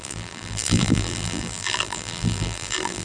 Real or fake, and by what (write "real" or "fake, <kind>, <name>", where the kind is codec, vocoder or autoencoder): fake, vocoder, BigVGAN v2